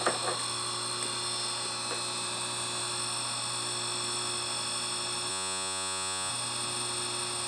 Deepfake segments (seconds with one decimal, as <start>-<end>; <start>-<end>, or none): 5.3-6.3